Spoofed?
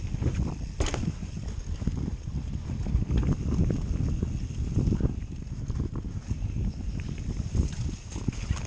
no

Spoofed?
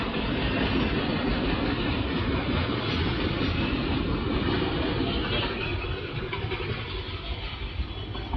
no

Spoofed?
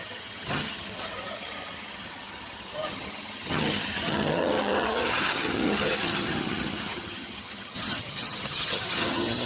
yes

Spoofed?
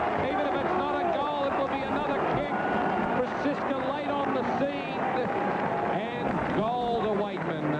no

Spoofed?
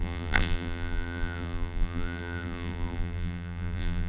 yes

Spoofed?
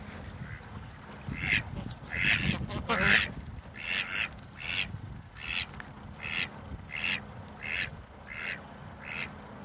no